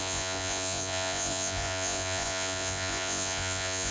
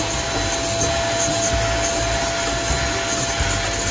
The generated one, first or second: first